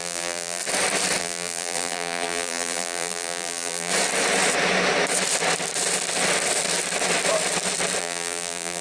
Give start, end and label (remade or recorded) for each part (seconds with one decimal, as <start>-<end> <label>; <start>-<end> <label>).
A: 0.0-0.6 remade; 0.6-1.2 recorded; 1.2-3.9 remade; 3.9-8.0 recorded; 8.0-8.8 remade